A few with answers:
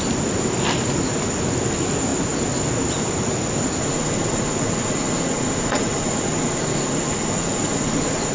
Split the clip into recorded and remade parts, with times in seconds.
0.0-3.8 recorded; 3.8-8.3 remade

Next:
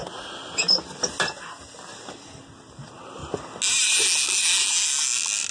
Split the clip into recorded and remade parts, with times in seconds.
0.0-5.5 recorded

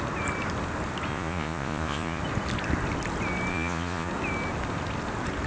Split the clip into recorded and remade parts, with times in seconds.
0.0-1.1 recorded; 1.1-2.2 remade; 2.2-3.5 recorded; 3.5-4.1 remade; 4.1-5.5 recorded